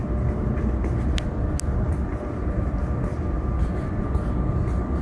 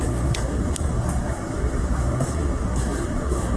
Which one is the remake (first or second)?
second